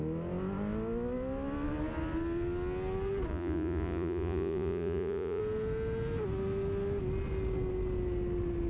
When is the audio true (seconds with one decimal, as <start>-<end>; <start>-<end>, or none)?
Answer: 0.0-3.3; 5.4-8.7